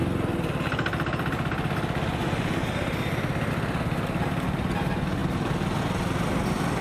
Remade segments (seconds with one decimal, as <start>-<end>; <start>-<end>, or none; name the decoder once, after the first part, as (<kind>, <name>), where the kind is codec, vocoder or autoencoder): none